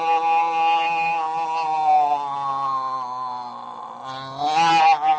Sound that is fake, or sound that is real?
real